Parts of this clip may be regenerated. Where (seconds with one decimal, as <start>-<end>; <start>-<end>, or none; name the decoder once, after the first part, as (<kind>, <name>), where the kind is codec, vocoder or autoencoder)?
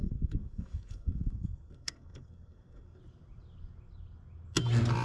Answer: 0.0-3.0 (codec, SNAC)